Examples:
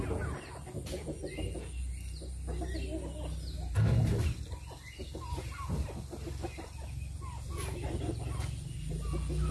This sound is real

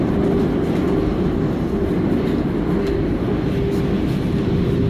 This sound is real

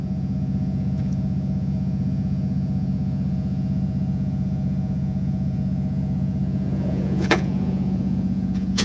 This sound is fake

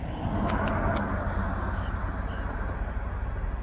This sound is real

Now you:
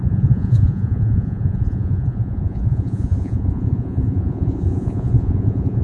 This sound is fake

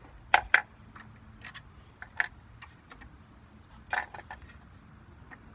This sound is real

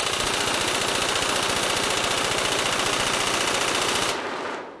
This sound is real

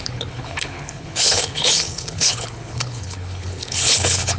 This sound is fake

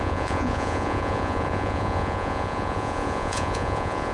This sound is fake